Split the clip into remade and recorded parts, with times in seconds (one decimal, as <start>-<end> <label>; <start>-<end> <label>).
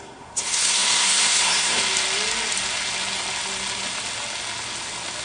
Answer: 0.0-1.8 remade; 1.8-5.2 recorded